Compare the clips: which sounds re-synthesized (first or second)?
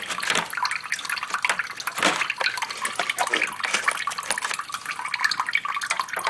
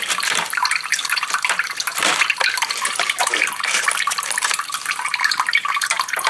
second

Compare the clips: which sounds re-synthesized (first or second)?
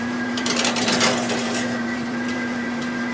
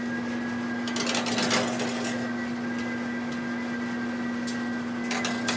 first